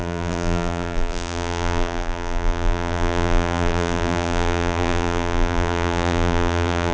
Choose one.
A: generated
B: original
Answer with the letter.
A